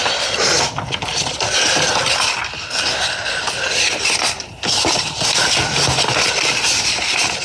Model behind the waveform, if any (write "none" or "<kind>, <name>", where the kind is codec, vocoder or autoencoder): none